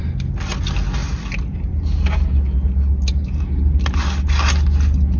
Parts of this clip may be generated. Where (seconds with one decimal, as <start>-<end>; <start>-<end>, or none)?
none